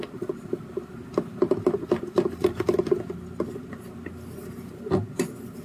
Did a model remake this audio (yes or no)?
no